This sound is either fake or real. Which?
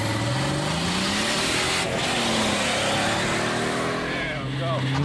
real